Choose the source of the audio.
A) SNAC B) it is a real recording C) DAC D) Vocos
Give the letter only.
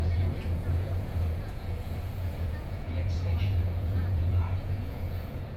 D